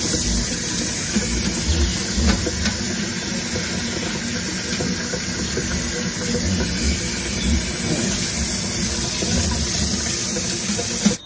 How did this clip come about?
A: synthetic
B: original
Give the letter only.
B